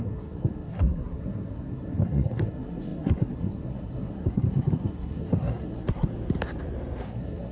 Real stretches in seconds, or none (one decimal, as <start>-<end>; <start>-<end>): 6.1-7.0